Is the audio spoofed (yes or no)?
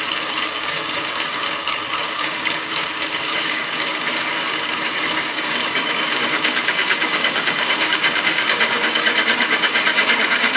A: yes